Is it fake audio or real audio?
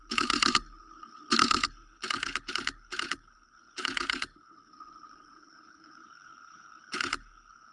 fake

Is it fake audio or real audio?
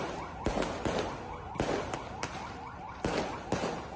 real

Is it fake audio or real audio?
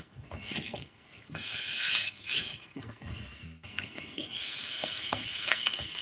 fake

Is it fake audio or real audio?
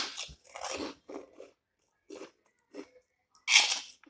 real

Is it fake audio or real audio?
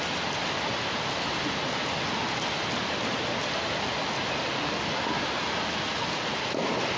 real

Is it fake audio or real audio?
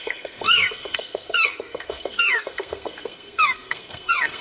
fake